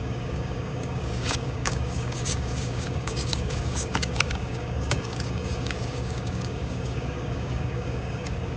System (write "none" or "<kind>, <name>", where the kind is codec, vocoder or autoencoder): codec, DAC